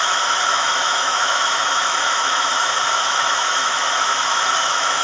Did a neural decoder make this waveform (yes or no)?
yes